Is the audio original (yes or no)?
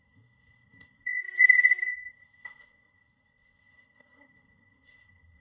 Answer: no